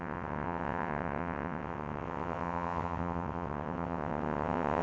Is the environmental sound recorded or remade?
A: remade